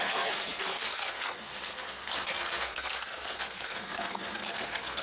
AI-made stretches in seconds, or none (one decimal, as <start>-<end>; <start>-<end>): 0.0-5.0